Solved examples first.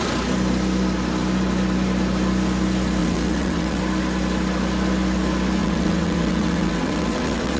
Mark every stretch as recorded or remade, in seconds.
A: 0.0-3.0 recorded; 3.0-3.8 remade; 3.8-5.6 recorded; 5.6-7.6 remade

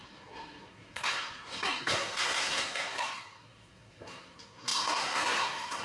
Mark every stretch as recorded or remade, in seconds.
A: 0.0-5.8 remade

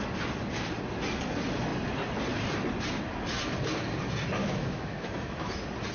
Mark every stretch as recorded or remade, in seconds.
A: 0.0-4.4 recorded; 4.4-5.5 remade; 5.5-5.9 recorded

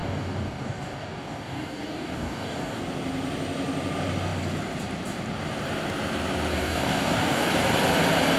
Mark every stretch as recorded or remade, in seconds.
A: 0.0-2.8 remade; 2.8-6.5 recorded; 6.5-7.5 remade; 7.5-8.4 recorded